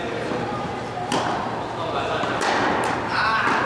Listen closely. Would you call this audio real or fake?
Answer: real